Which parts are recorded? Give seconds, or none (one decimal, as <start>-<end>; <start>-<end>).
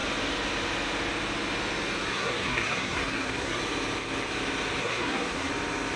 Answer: 0.0-2.1; 3.6-4.8; 5.5-6.0